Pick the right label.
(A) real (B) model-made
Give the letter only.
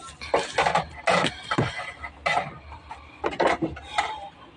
A